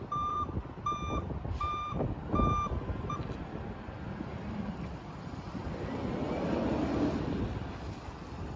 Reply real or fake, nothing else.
fake